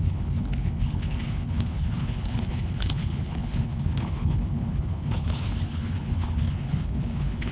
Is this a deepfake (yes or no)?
yes